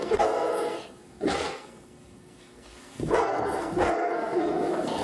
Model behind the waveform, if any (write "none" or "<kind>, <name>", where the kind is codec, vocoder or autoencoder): codec, SNAC